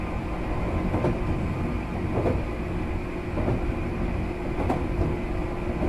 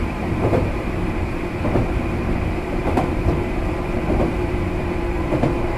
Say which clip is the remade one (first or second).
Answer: second